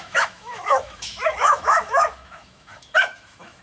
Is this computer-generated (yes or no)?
yes